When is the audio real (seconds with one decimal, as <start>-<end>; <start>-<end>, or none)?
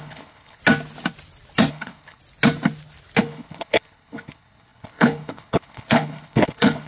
0.6-1.7; 2.2-3.2